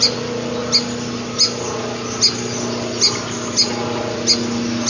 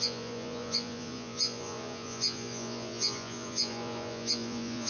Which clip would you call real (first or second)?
first